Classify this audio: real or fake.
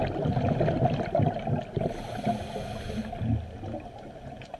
real